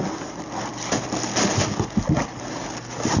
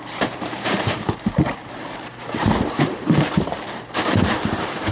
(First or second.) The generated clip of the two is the second